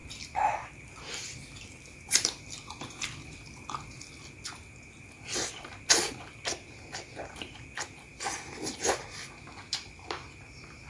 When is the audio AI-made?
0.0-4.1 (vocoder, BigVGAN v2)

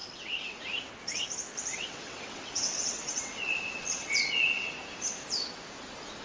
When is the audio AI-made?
0.0-0.6 (vocoder, WaveNeXt); 1.7-4.7

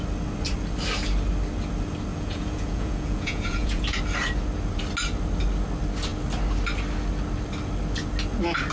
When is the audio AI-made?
2.1-4.0 (vocoder, Vocos)